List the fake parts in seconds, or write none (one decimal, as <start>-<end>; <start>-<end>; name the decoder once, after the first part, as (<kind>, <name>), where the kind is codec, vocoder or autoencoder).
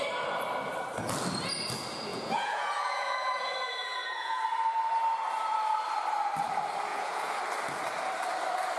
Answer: 2.1-4.4 (vocoder, Vocos); 6.9-7.4